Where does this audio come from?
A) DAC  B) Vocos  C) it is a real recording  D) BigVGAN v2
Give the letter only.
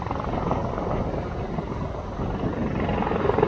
C